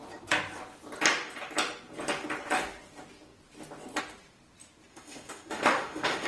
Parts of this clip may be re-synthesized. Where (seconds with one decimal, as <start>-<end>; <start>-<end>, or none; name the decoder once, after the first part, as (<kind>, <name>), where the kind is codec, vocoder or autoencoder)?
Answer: 4.9-6.3 (autoencoder, DAC-VAE)